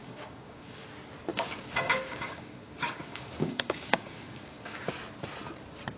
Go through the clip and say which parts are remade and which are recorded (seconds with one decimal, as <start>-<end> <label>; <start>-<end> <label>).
0.0-0.8 remade; 0.8-1.3 recorded; 1.3-4.9 remade; 4.9-6.0 recorded